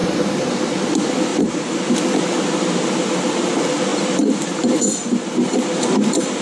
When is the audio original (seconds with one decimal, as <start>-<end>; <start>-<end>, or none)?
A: 0.6-1.3; 1.8-3.9